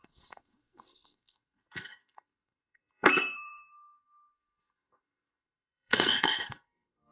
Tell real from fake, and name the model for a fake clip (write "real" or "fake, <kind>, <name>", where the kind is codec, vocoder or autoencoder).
fake, codec, SNAC